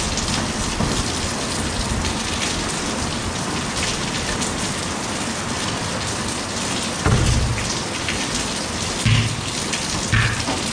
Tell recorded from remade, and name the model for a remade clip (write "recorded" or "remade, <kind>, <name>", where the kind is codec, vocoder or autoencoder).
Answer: recorded